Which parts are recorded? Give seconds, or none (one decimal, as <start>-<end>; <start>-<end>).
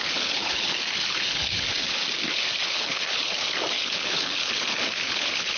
1.7-2.3